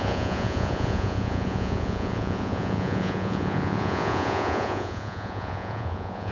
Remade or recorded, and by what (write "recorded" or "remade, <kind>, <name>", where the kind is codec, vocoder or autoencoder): remade, vocoder, Vocos